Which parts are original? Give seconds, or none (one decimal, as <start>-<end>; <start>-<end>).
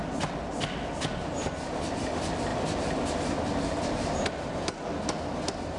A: 0.0-5.8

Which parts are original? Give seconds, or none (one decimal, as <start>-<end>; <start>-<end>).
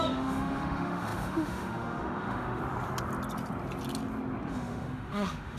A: 2.6-4.5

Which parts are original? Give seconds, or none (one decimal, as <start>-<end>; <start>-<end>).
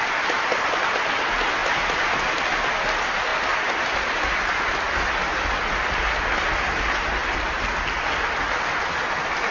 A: 0.0-9.5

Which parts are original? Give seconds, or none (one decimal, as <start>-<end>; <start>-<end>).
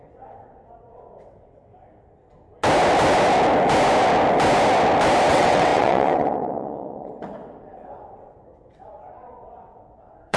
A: 1.7-5.3